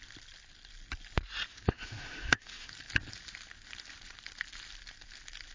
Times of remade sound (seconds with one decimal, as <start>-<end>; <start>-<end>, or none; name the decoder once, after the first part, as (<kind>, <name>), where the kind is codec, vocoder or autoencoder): 1.5-2.7 (autoencoder, DAC-VAE)